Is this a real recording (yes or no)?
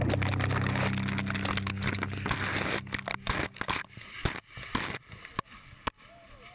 yes